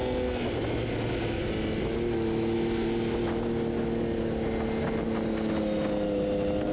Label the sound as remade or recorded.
recorded